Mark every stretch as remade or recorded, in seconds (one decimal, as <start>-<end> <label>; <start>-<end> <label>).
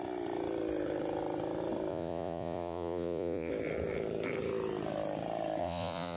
0.0-1.9 recorded; 1.9-3.5 remade; 3.5-5.6 recorded; 5.6-6.2 remade